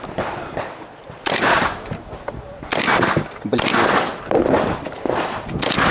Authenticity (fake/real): fake